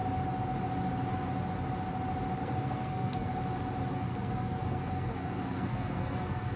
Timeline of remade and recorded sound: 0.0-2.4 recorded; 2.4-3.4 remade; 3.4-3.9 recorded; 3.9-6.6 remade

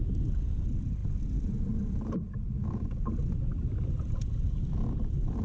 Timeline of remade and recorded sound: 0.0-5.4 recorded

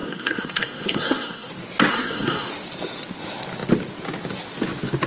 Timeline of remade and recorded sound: 0.0-1.5 remade; 1.5-1.9 recorded; 1.9-2.5 remade; 2.5-5.1 recorded

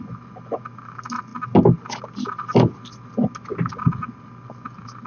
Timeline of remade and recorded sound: 0.0-5.1 recorded

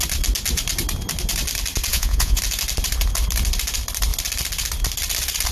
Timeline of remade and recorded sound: 0.0-1.9 recorded; 1.9-2.4 remade; 2.4-5.5 recorded

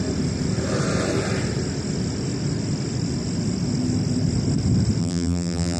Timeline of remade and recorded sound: 0.0-5.0 recorded; 5.0-5.8 remade

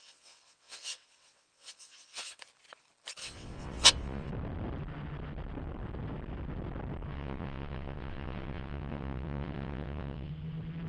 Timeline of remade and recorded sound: 0.0-2.4 remade; 2.4-3.2 recorded; 3.2-4.3 remade; 4.3-7.1 recorded; 7.1-10.3 remade; 10.3-10.9 recorded